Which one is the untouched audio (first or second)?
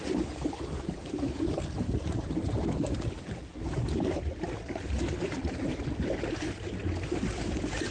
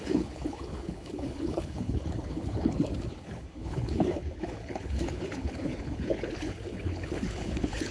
first